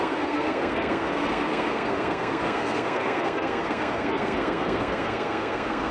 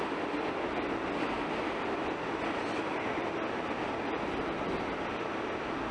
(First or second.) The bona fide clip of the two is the second